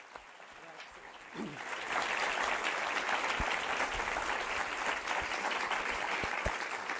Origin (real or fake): real